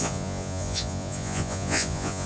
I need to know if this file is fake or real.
fake